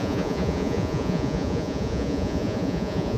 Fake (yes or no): yes